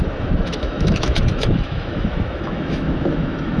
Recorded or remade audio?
remade